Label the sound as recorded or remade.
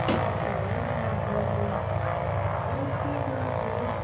recorded